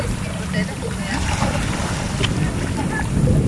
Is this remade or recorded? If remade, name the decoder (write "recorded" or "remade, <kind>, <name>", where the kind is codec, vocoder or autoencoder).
remade, vocoder, BigVGAN v2